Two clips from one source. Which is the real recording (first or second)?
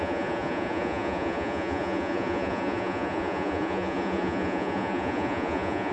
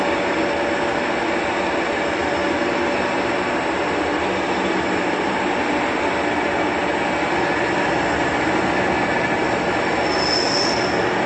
second